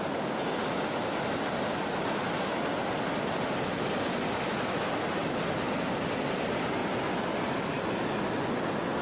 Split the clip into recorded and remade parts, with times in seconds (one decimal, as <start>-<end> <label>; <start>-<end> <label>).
0.0-9.0 recorded